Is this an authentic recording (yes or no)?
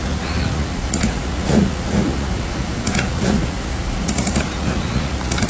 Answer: no